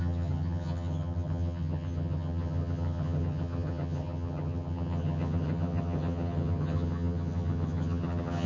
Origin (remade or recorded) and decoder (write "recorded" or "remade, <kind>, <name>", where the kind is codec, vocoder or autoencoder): remade, vocoder, HiFi-GAN